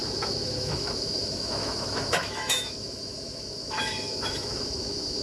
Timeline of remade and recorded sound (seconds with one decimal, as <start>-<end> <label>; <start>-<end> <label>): 0.0-5.2 remade